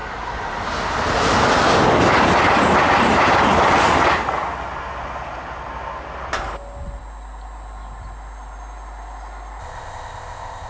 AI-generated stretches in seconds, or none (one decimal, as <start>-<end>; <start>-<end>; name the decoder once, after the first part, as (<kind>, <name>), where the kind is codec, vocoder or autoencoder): 9.6-10.7 (codec, ZipCodec)